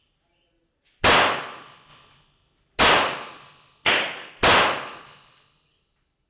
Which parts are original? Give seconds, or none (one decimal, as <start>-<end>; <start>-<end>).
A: 0.0-6.3